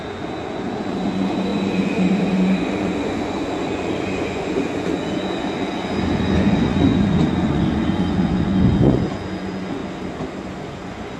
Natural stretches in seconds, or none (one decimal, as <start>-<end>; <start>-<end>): 9.8-10.6